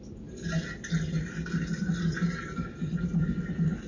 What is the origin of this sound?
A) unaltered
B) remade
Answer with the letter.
A